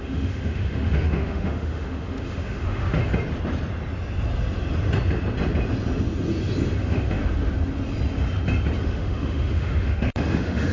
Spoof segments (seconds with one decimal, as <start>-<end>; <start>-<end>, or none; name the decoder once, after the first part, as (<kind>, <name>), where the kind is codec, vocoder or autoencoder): 0.0-3.0 (autoencoder, DAC-VAE); 6.8-7.2; 8.8-10.7